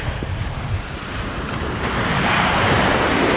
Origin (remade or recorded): remade